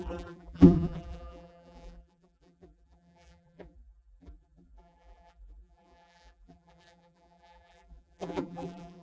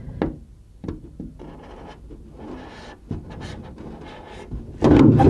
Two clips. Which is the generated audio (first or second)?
first